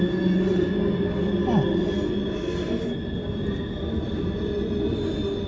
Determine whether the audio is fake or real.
real